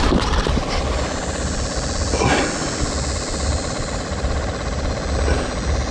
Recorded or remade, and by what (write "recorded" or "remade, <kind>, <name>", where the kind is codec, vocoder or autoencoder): recorded